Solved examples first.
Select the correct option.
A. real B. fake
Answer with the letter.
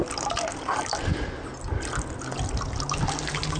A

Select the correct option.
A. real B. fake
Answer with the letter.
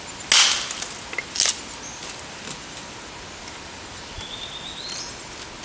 A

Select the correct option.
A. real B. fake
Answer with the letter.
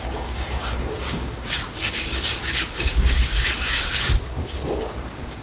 B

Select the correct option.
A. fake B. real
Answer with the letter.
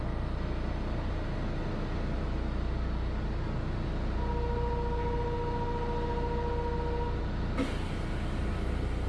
B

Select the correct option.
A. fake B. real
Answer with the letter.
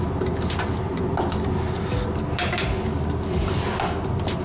B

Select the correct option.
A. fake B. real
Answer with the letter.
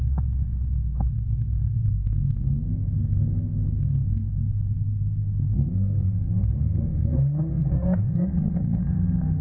A